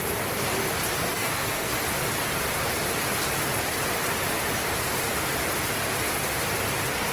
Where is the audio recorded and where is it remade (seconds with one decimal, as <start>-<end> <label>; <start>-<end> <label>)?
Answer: 0.0-1.1 recorded; 1.1-1.7 remade; 1.7-7.1 recorded